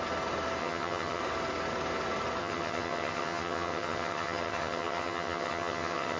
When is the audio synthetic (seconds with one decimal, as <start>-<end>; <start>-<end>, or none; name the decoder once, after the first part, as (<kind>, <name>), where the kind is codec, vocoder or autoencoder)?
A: 0.6-1.2 (vocoder, HiFi-GAN); 2.4-6.2